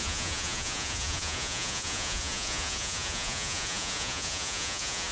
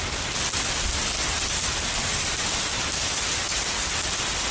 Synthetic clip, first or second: first